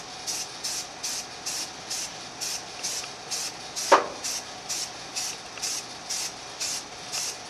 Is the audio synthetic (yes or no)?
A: no